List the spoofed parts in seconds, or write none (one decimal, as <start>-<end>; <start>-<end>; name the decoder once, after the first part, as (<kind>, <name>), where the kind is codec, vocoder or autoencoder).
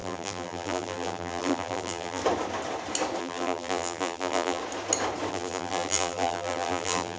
0.0-2.2 (vocoder, BigVGAN v2); 3.2-4.6; 5.3-7.2